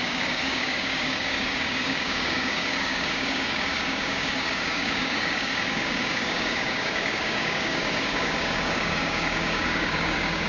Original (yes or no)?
no